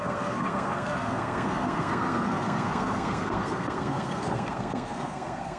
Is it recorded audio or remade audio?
remade